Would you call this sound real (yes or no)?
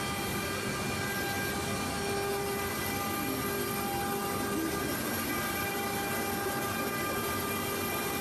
yes